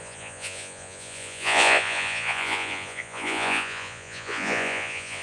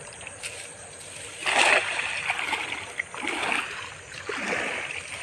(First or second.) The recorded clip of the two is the second